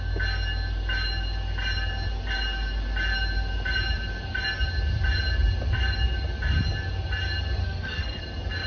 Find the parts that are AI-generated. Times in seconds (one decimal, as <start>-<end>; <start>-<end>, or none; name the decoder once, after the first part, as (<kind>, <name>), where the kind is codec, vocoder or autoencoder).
7.6-8.2 (codec, SNAC)